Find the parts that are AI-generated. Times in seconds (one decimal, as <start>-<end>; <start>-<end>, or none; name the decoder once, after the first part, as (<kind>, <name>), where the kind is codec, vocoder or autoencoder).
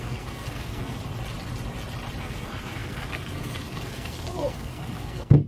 0.0-1.0 (codec, SNAC); 2.2-5.5